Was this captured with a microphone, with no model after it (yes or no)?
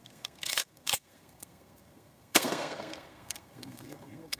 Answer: no